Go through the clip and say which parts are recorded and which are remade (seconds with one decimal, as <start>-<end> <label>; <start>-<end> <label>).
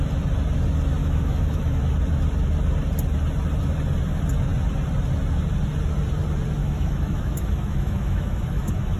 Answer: 0.0-1.0 recorded; 1.0-1.8 remade; 1.8-6.6 recorded; 6.6-9.0 remade